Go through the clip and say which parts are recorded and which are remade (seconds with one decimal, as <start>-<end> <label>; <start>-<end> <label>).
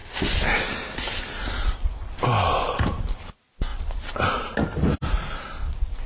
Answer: 0.0-6.1 recorded